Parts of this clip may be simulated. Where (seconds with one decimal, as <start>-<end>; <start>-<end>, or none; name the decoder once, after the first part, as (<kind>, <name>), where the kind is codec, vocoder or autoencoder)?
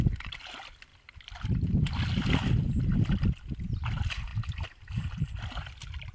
none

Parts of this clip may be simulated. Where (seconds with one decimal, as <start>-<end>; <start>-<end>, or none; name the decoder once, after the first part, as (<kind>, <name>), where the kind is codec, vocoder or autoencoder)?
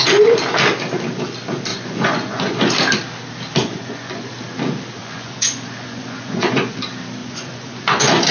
1.7-2.7 (vocoder, Vocos); 3.6-4.3; 5.0-6.8; 7.2-8.3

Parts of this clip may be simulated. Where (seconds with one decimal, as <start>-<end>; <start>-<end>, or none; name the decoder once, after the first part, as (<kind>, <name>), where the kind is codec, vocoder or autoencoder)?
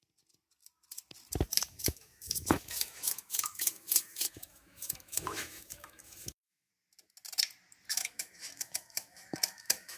1.7-6.7 (autoencoder, DAC-VAE); 7.9-10.0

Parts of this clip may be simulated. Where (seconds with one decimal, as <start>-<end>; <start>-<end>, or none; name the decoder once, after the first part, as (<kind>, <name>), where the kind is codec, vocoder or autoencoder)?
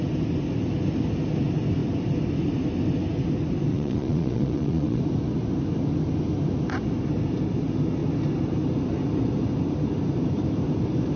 3.7-5.0 (vocoder, Vocos)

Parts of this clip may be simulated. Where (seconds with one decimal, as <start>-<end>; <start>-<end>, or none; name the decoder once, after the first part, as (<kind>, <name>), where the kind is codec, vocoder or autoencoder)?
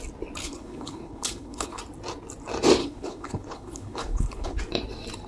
0.4-1.8 (codec, HILCodec); 2.8-4.6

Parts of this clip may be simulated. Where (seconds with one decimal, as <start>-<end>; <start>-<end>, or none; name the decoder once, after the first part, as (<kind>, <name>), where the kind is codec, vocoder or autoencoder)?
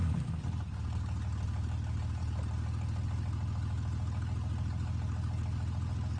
none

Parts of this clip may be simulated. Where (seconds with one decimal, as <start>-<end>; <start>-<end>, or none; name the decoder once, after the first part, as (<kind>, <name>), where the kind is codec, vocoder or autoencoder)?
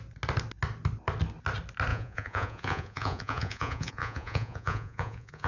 1.9-5.5 (vocoder, Vocos)